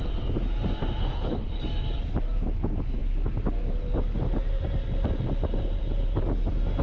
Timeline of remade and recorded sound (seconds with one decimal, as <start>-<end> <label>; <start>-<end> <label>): 0.0-1.0 recorded; 1.0-1.6 remade; 1.6-6.8 recorded